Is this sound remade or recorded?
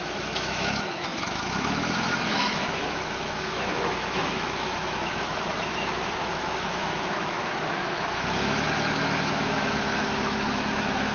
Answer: remade